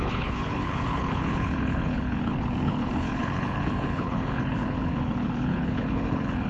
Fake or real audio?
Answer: fake